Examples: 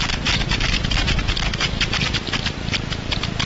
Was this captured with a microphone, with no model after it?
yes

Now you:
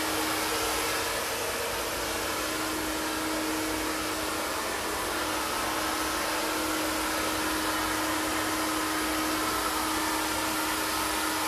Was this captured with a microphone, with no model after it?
yes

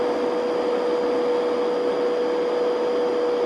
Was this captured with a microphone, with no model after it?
yes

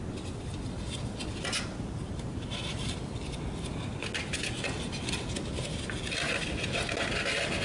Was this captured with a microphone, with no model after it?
yes